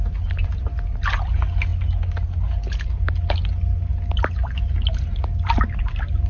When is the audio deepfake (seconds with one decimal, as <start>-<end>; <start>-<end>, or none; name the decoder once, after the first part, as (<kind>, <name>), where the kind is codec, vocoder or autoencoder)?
none